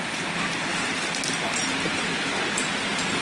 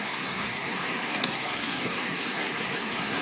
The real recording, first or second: first